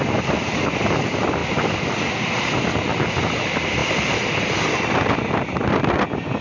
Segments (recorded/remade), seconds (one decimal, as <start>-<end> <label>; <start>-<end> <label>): 0.0-6.4 recorded